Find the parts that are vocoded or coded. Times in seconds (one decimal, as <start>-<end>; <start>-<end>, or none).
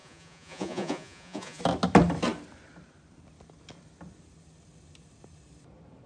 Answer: 0.0-1.6